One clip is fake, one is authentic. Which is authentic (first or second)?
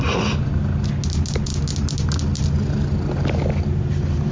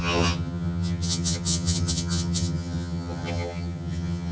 first